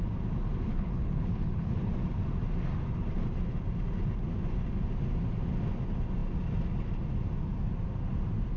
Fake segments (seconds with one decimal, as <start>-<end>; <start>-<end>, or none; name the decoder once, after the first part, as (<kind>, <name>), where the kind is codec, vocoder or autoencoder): 0.7-1.9 (codec, HILCodec)